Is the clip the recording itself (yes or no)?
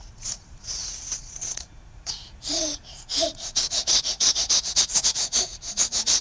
no